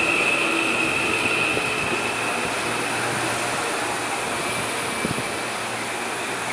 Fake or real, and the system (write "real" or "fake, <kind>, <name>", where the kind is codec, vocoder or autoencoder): real